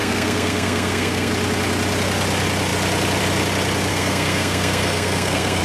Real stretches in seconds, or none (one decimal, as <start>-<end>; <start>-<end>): 1.3-3.9